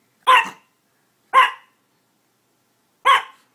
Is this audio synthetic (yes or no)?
no